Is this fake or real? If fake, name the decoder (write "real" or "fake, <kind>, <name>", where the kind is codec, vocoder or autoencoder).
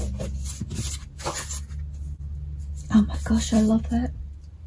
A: real